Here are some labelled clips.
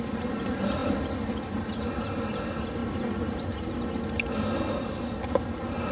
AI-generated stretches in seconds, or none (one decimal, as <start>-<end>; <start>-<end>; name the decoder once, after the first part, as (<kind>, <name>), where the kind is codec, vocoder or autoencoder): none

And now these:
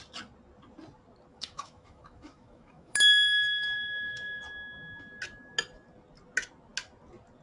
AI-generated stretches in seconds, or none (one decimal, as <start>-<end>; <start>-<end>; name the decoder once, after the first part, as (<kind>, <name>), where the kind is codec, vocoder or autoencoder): 1.3-4.4 (autoencoder, DAC-VAE)

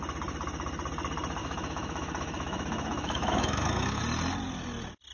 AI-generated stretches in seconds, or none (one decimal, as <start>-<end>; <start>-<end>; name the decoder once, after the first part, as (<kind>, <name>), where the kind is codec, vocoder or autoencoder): 1.4-4.0 (autoencoder, DAC-VAE)

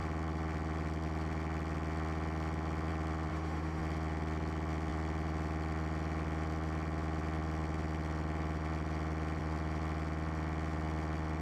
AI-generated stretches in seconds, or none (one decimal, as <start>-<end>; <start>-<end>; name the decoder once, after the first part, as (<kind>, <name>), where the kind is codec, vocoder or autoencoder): 3.3-3.8 (autoencoder, DAC-VAE)

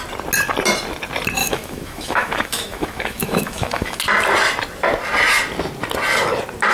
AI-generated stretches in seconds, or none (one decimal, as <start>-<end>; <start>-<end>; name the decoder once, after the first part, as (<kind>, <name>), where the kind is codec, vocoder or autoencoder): 1.4-4.0 (autoencoder, DAC-VAE)